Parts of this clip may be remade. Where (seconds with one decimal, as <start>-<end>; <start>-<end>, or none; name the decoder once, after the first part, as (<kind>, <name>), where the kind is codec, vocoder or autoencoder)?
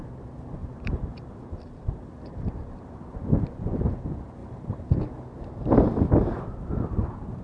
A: 0.6-3.0 (vocoder, BigVGAN v2); 4.4-4.9